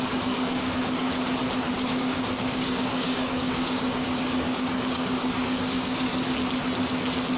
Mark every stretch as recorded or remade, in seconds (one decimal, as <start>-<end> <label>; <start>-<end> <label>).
0.0-1.1 remade; 1.1-1.7 recorded; 1.7-6.1 remade; 6.1-7.4 recorded